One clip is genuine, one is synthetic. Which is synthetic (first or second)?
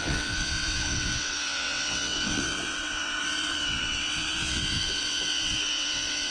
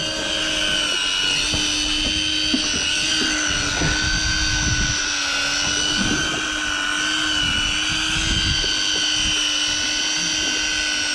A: first